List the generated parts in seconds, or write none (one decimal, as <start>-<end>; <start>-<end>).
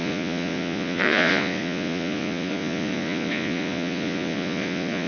0.0-5.1